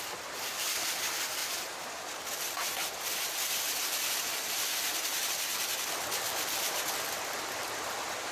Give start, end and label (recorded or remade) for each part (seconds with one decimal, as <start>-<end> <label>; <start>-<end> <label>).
0.0-1.4 remade; 1.4-3.5 recorded; 3.5-4.9 remade; 4.9-6.1 recorded; 6.1-8.3 remade